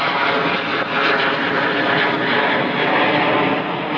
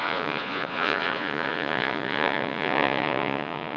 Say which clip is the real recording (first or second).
first